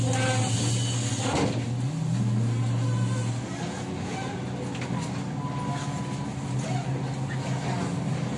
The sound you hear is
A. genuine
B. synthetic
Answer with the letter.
A